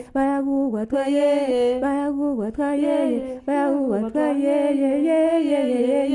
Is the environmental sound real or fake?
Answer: real